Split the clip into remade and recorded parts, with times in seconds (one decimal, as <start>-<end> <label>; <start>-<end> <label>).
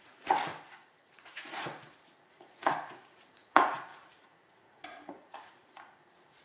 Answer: 0.0-6.4 remade